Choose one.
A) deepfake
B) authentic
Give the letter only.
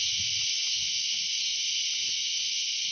B